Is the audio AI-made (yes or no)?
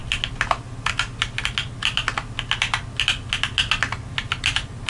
no